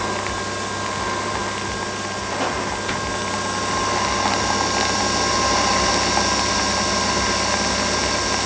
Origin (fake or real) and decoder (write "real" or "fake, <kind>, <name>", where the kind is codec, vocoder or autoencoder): real